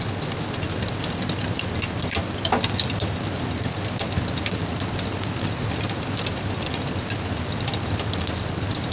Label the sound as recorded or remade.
recorded